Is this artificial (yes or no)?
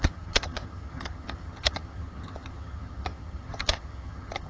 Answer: yes